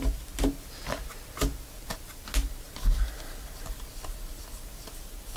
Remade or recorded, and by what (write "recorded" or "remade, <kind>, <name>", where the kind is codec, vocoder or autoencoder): recorded